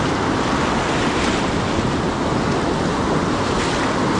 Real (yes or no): yes